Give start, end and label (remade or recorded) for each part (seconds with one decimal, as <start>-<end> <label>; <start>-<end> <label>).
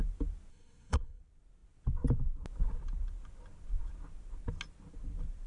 0.0-0.5 recorded; 0.5-1.2 remade; 1.2-5.5 recorded